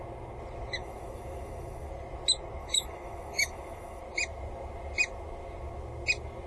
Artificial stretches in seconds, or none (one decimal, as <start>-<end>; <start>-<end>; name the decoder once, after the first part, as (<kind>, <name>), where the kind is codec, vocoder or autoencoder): 0.8-1.9 (autoencoder, DAC-VAE); 2.6-4.0